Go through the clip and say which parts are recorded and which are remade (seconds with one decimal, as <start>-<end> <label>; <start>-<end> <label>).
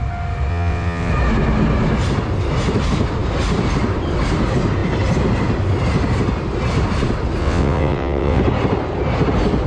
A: 0.0-0.5 recorded; 0.5-1.1 remade; 1.1-7.4 recorded; 7.4-8.4 remade; 8.4-9.7 recorded